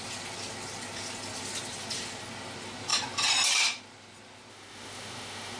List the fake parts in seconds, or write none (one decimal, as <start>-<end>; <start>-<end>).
4.5-5.6